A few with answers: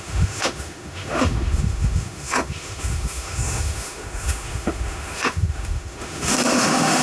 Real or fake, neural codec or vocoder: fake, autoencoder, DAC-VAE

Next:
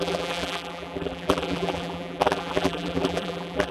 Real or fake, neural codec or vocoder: fake, vocoder, BigVGAN v2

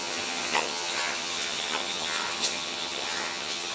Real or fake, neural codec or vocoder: fake, vocoder, HiFi-GAN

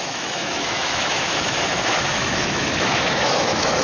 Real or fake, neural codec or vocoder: fake, autoencoder, DAC-VAE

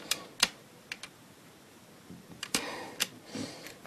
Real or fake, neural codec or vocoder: real